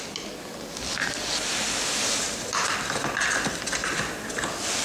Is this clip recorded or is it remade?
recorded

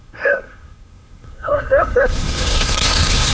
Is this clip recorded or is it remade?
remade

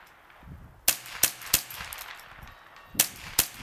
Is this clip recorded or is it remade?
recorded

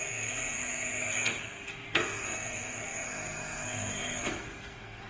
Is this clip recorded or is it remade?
remade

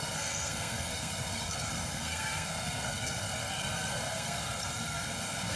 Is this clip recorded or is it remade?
remade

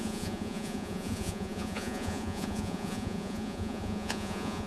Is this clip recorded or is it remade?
remade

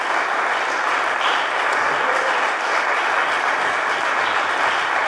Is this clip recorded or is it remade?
recorded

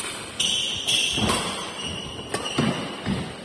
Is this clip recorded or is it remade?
remade